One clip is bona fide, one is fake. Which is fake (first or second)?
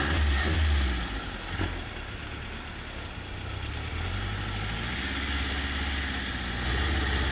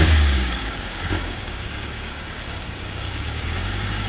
second